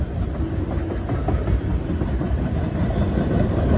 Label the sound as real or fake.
real